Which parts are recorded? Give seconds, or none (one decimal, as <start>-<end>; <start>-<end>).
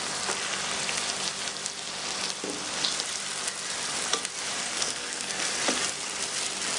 0.0-4.7; 5.5-6.8